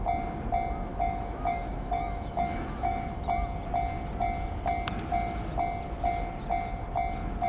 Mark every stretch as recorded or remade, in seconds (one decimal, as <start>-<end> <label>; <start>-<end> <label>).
0.0-0.9 recorded; 0.9-3.1 remade; 3.1-7.5 recorded